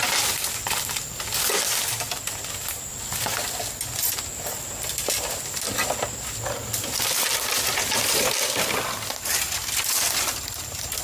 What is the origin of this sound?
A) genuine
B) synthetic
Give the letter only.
A